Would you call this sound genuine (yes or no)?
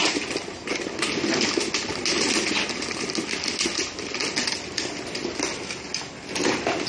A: yes